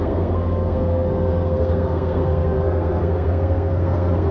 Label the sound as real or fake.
fake